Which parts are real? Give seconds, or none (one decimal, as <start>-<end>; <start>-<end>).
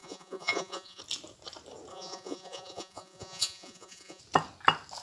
1.0-1.9; 4.2-5.0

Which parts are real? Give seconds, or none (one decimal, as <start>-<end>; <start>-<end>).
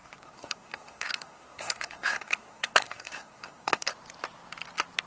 3.9-5.1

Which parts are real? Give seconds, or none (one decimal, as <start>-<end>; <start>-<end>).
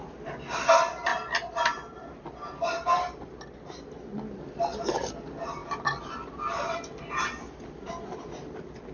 0.0-8.9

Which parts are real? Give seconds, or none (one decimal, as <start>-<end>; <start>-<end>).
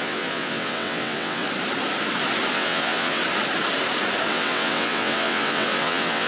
1.4-2.5; 3.2-4.3